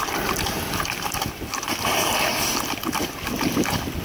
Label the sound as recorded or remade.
recorded